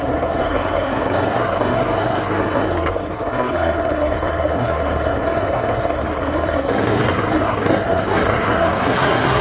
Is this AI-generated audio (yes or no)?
yes